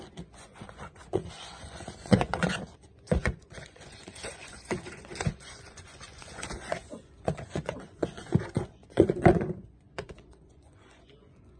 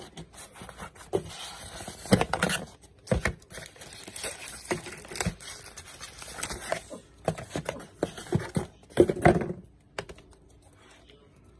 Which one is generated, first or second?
first